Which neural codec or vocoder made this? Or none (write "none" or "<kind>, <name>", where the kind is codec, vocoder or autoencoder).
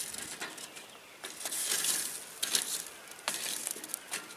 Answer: none